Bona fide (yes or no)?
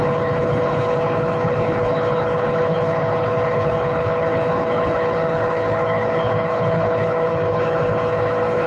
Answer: no